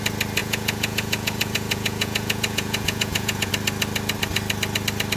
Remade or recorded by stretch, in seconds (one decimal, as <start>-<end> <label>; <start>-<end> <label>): 0.0-0.4 recorded; 0.4-3.5 remade; 3.5-5.2 recorded